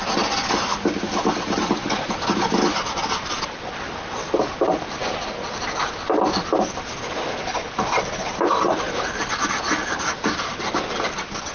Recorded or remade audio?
recorded